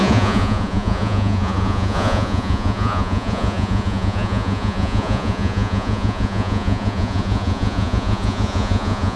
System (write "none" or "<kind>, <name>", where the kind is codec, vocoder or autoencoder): vocoder, Vocos